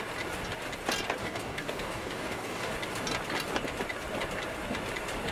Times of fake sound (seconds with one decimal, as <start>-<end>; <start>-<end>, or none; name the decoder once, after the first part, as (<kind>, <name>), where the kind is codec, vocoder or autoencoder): 1.2-2.7 (codec, DAC)